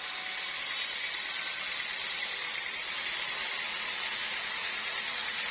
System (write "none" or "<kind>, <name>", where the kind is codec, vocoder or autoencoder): none